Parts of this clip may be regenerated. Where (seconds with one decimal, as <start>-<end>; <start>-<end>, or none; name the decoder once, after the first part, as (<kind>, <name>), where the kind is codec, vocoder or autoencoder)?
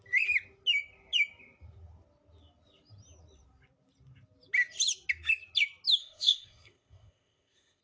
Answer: 6.0-7.8 (codec, ZipCodec)